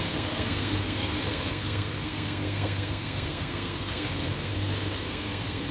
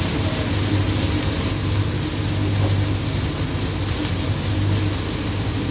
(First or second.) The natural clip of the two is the second